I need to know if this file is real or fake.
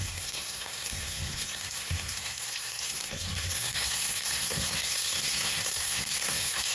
fake